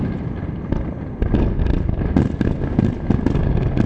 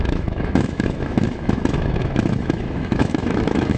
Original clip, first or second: first